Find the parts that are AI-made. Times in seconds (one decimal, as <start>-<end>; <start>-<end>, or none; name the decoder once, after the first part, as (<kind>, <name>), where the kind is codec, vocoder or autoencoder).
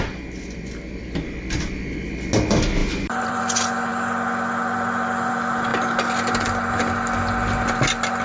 0.0-2.1 (vocoder, BigVGAN v2); 2.8-3.4